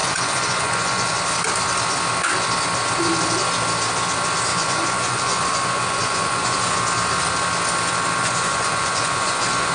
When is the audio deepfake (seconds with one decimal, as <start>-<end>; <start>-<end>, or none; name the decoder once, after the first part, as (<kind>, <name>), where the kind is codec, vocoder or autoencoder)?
0.0-1.2 (vocoder, Vocos); 4.5-6.8; 8.2-9.7